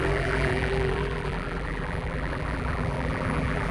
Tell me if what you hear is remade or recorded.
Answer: remade